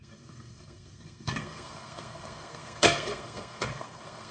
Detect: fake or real fake